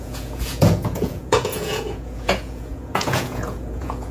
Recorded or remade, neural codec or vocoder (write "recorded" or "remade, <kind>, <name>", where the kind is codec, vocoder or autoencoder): remade, vocoder, Vocos